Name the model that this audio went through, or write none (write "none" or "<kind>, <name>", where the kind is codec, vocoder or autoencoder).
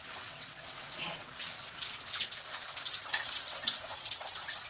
vocoder, WaveNeXt